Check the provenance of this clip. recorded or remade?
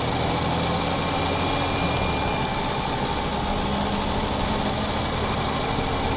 recorded